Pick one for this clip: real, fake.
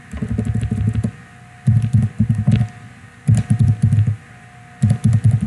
real